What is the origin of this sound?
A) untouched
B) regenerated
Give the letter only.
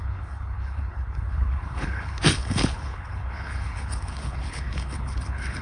B